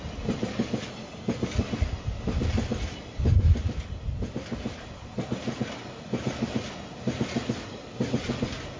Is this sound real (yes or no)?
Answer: yes